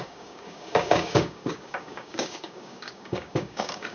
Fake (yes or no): yes